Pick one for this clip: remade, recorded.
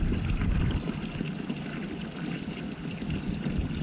recorded